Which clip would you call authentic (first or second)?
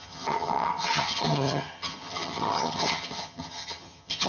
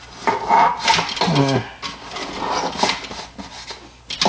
second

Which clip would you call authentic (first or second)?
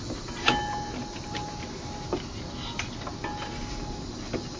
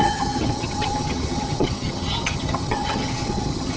first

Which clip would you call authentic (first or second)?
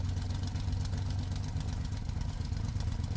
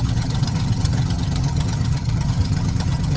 first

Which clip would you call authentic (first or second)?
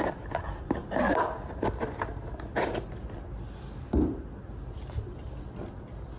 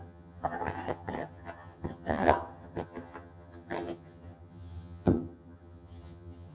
first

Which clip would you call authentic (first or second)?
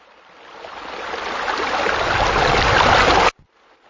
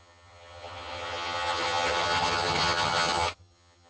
first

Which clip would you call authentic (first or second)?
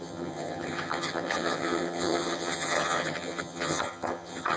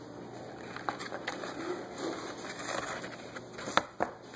second